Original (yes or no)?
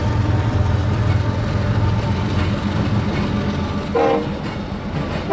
yes